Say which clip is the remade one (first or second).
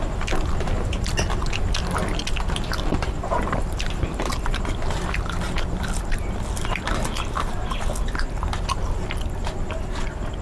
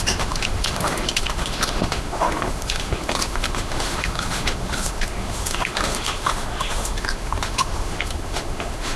second